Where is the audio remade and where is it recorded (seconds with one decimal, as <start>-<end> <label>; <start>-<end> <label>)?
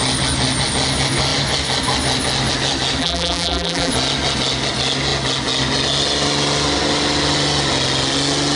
0.0-3.0 recorded; 3.0-3.9 remade; 3.9-8.6 recorded